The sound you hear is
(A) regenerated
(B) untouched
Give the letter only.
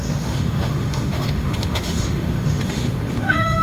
A